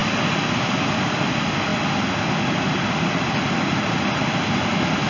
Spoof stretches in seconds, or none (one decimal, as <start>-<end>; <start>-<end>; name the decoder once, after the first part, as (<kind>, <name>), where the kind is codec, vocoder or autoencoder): none